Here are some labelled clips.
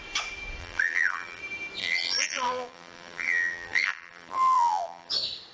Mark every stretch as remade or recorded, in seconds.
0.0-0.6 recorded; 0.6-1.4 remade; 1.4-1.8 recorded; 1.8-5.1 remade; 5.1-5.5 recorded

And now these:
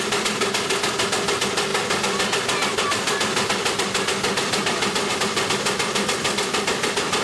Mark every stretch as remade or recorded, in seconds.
0.0-7.2 recorded

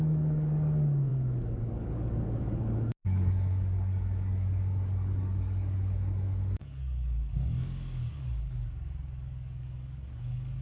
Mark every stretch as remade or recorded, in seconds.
0.0-10.6 remade